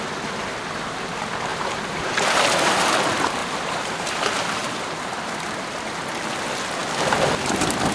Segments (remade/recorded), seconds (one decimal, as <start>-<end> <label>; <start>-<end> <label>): 0.0-1.5 recorded; 1.5-2.4 remade; 2.4-3.4 recorded; 3.4-5.3 remade; 5.3-7.9 recorded